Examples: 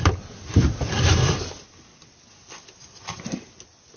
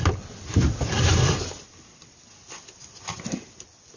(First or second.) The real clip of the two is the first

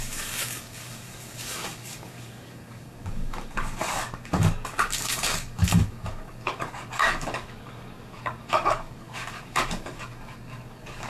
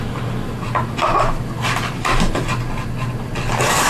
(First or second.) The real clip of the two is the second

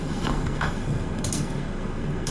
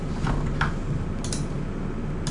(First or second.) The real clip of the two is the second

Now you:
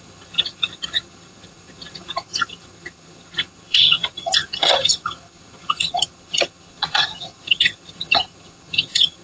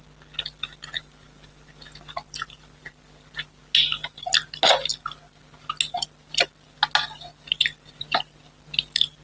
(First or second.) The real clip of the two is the second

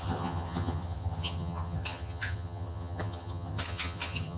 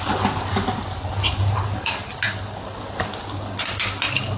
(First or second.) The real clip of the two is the second